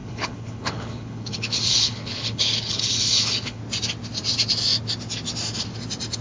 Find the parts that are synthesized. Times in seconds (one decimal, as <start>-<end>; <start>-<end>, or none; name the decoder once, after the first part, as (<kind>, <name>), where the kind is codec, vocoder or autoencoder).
0.0-3.6 (codec, HILCodec)

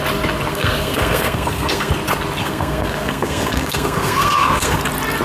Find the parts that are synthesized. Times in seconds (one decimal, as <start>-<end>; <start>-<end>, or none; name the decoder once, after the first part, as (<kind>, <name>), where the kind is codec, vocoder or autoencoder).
0.5-1.9 (codec, SNAC); 2.4-4.8

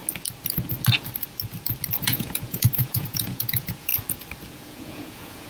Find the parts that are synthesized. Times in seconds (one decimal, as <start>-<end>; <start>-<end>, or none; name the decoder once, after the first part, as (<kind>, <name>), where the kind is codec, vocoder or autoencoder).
2.0-3.9 (vocoder, Vocos); 4.5-5.5

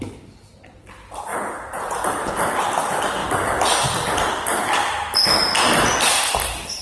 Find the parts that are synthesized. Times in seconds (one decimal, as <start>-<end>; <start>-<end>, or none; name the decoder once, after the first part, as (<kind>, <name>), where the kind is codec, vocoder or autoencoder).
1.3-2.4 (vocoder, Vocos)

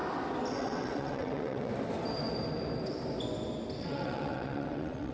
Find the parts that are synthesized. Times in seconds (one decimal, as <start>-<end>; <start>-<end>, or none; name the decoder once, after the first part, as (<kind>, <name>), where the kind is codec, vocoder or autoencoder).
0.5-1.7 (vocoder, WaveNeXt); 3.8-5.1

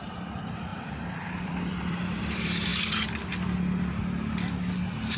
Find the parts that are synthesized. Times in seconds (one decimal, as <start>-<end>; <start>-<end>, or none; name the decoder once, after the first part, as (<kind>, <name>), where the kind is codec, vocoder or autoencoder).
0.0-2.7 (vocoder, BigVGAN v2)